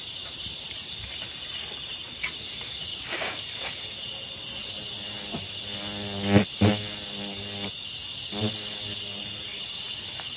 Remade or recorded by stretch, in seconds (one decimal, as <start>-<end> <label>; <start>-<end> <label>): 0.0-2.9 recorded; 2.9-3.4 remade; 3.4-10.4 recorded